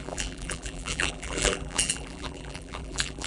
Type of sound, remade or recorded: remade